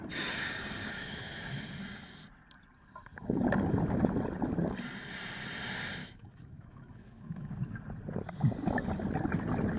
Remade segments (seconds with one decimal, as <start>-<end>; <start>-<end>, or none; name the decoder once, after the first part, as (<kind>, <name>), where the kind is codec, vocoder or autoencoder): 0.8-1.6 (autoencoder, DAC-VAE); 6.0-7.5